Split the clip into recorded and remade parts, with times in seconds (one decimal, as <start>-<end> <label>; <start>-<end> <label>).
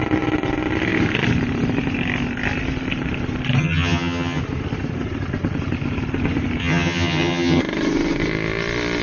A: 0.0-3.6 recorded; 3.6-4.4 remade; 4.4-6.6 recorded; 6.6-7.6 remade; 7.6-9.0 recorded